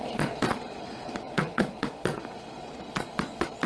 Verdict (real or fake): fake